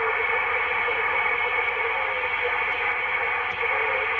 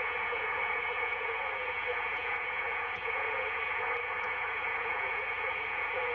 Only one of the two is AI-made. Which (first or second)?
second